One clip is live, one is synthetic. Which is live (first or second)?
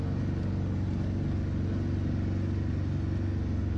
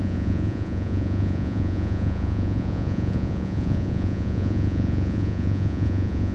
first